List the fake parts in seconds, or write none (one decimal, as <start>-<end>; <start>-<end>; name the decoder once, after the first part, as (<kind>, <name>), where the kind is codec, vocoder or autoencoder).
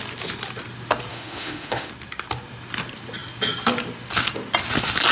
1.1-1.9 (autoencoder, DAC-VAE)